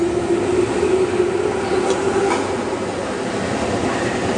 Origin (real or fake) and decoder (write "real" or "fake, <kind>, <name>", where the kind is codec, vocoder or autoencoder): real